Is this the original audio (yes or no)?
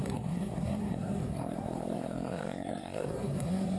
no